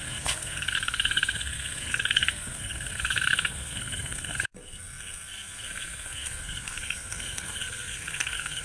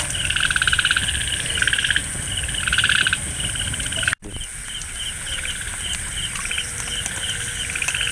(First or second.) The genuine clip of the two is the second